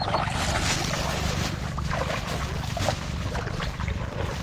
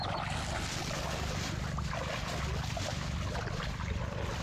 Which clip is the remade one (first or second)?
first